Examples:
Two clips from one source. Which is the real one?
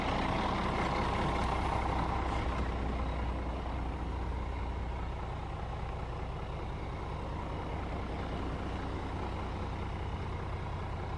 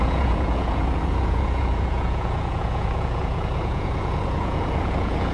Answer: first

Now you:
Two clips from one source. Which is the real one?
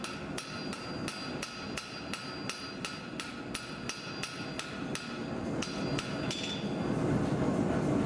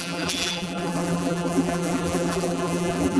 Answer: first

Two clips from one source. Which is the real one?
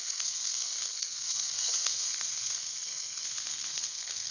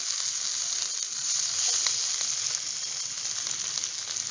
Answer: second